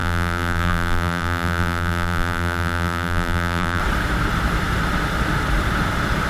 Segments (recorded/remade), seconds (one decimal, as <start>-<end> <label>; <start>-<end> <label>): 0.0-3.8 remade; 3.8-6.3 recorded